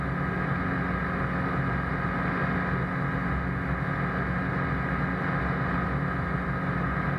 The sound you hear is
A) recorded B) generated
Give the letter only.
A